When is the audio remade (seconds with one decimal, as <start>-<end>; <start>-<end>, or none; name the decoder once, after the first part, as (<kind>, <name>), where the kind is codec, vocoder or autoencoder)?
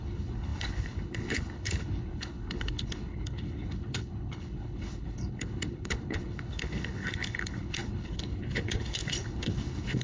0.0-10.0 (codec, HILCodec)